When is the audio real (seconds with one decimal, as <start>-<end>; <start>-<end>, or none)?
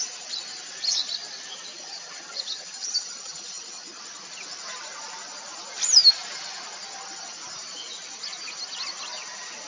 0.0-1.7; 4.0-9.7